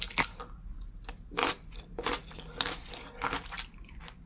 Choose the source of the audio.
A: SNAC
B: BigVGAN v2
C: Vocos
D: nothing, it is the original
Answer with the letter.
D